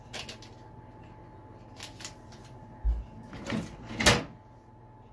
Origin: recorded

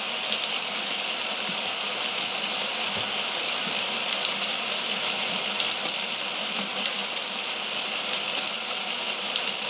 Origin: recorded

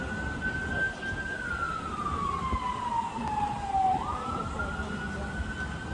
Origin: recorded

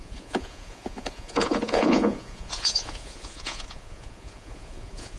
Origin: remade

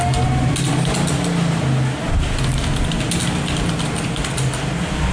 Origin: recorded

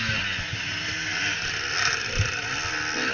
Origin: recorded